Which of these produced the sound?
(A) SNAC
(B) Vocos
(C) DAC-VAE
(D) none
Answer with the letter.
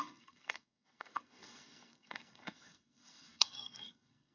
A